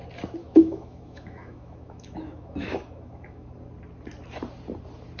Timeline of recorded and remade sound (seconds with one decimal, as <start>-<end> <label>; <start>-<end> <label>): 0.0-0.4 recorded; 0.4-3.5 remade; 3.5-5.2 recorded

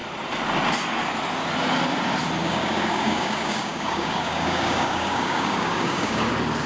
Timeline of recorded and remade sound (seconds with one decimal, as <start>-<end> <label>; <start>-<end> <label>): 0.0-2.4 recorded; 2.4-6.3 remade; 6.3-6.7 recorded

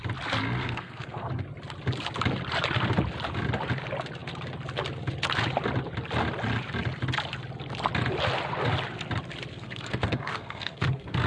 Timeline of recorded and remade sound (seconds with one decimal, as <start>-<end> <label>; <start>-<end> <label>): 0.0-0.6 recorded; 0.6-1.3 remade; 1.3-9.5 recorded; 9.5-11.3 remade

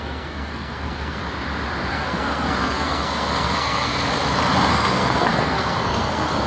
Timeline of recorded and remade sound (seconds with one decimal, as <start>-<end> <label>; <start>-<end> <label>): 0.0-1.2 remade; 1.2-1.9 recorded; 1.9-3.9 remade; 3.9-4.7 recorded; 4.7-6.5 remade

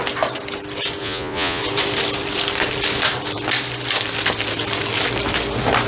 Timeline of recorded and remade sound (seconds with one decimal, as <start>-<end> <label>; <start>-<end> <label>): 0.0-1.0 recorded; 1.0-1.6 remade; 1.6-5.9 recorded

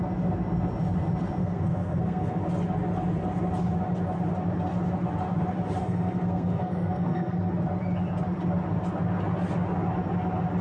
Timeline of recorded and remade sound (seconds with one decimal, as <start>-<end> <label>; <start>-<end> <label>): 0.0-1.4 recorded; 1.4-2.4 remade; 2.4-5.8 recorded; 5.8-7.5 remade; 7.5-10.6 recorded

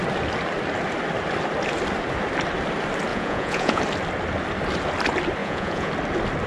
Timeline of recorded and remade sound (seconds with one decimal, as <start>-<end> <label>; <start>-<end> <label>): 0.0-3.1 recorded; 3.1-3.8 remade; 3.8-5.4 recorded; 5.4-5.9 remade; 5.9-6.5 recorded

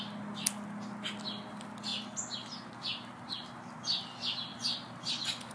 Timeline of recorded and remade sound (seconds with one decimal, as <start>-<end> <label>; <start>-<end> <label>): 0.0-5.5 recorded